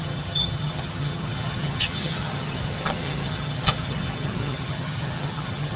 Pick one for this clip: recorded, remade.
remade